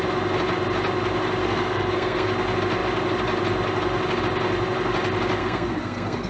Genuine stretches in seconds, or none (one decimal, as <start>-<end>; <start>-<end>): 0.0-1.4; 2.3-5.4